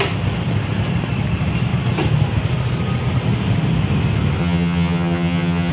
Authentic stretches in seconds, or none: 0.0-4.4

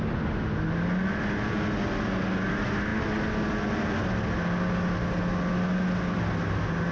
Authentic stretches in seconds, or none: 0.0-6.9

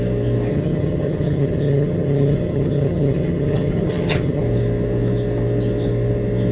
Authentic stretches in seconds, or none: 0.0-0.5; 4.4-6.5

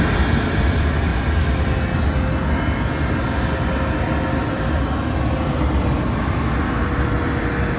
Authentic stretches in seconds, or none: 0.0-7.8

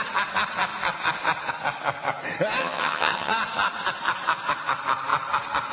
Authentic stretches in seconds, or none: 0.0-2.6; 3.3-5.7

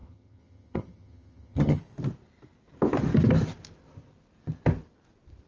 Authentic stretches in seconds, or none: 1.8-5.5

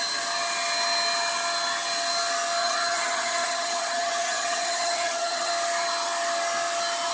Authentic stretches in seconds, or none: 0.0-2.6; 5.5-7.1